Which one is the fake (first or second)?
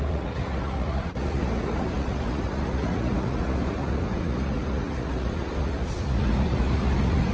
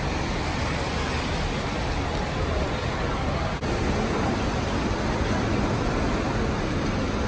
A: first